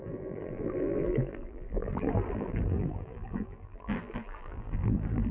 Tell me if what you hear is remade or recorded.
remade